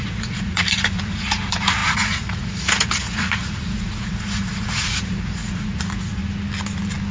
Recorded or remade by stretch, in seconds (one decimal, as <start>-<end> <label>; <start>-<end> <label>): 0.0-6.2 remade; 6.2-7.1 recorded